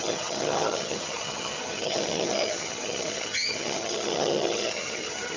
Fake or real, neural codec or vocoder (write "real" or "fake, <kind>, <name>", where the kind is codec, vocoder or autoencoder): fake, vocoder, HiFi-GAN